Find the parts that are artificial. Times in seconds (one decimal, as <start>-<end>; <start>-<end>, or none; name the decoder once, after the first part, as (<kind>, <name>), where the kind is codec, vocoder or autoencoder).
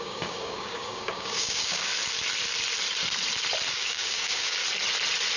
0.0-1.9 (codec, DAC); 3.7-4.6